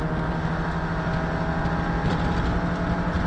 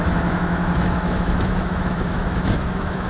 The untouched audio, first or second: first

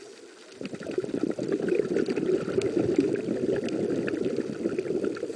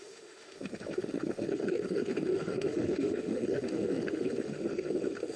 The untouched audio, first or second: first